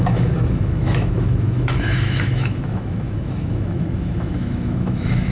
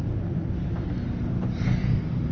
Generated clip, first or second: first